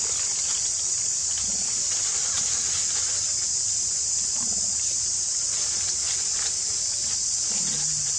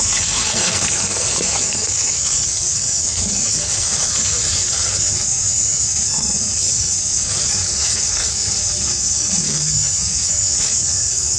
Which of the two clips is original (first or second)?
first